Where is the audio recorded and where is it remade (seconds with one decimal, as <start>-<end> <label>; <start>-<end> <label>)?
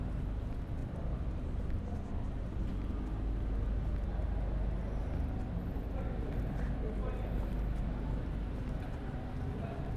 0.0-10.0 recorded